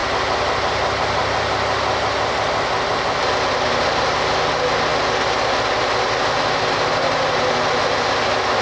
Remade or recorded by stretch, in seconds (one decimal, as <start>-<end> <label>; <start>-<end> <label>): 0.0-8.6 recorded